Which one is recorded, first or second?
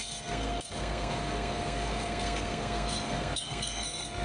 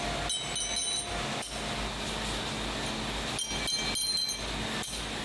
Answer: second